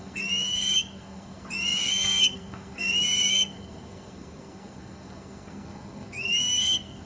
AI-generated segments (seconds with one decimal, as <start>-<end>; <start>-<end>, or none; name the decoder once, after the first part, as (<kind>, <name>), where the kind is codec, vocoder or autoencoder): 0.0-7.1 (codec, SNAC)

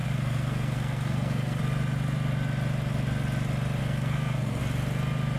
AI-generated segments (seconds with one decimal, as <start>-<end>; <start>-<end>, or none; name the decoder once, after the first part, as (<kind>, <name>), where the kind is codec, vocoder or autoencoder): 0.0-1.6 (codec, SNAC); 3.8-4.6